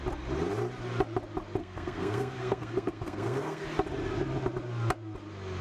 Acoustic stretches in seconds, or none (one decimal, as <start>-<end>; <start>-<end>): 0.0-1.6; 3.6-5.6